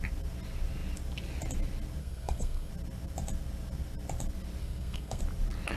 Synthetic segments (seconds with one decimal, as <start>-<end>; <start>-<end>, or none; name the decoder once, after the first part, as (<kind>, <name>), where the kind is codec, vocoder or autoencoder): 2.0-2.7 (codec, SNAC); 4.6-5.2